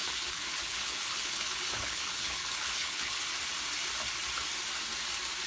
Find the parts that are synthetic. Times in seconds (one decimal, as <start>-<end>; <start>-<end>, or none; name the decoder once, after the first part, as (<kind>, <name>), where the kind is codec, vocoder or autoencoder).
0.0-3.3 (codec, HILCodec)